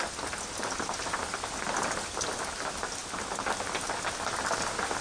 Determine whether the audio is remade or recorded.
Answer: recorded